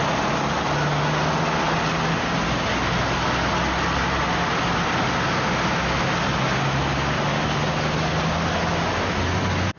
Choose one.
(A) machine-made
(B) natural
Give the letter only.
B